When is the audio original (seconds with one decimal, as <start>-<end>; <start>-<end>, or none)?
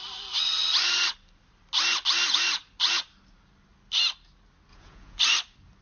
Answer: 0.0-4.7; 5.2-5.8